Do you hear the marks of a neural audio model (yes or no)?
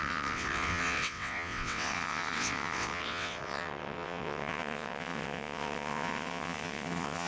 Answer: yes